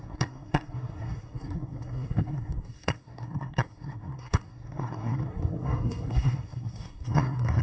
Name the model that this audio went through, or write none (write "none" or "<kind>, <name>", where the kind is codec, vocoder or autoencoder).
codec, SNAC